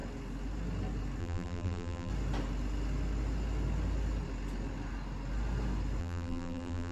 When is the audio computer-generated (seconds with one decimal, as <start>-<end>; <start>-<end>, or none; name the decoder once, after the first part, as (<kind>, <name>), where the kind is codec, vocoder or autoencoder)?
1.2-2.1 (vocoder, BigVGAN v2); 6.0-6.9